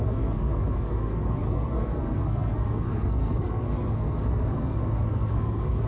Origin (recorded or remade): remade